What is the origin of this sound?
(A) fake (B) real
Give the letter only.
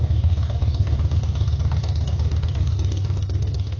A